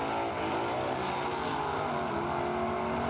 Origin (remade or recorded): recorded